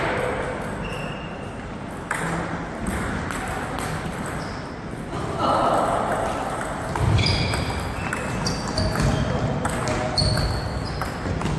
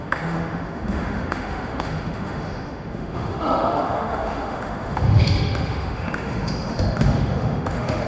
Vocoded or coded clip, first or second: second